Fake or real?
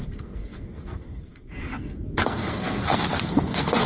fake